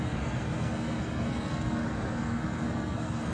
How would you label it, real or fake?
fake